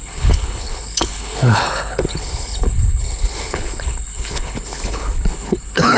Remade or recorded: remade